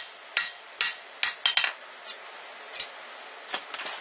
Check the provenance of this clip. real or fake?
real